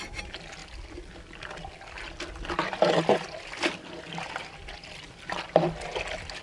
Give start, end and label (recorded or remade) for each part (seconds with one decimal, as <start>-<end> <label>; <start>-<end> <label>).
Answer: 0.0-6.4 recorded